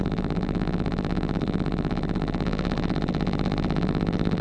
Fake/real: fake